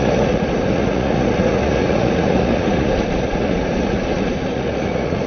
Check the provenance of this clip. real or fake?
fake